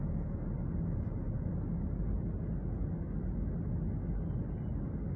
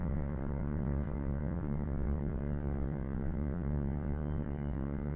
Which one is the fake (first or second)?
second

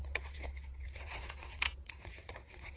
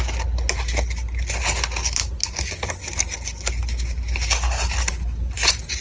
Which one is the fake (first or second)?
first